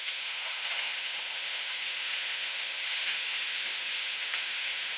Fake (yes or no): yes